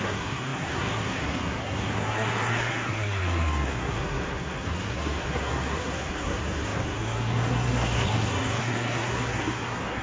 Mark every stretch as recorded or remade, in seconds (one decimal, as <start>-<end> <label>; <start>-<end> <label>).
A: 0.0-10.0 remade